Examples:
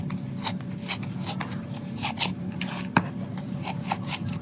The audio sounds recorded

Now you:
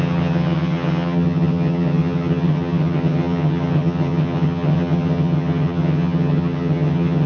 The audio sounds remade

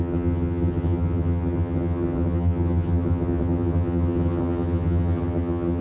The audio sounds remade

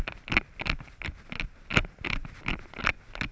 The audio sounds recorded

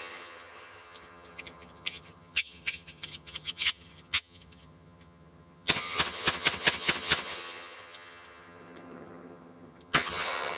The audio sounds remade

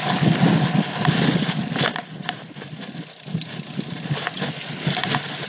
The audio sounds recorded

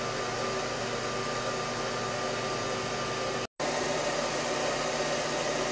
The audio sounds recorded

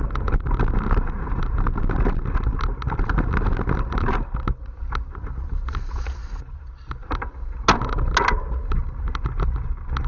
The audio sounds recorded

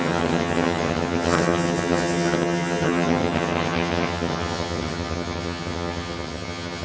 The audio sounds remade